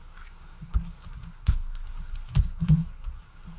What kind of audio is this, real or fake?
fake